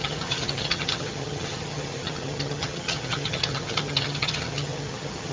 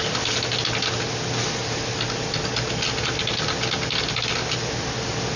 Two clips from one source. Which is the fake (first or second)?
first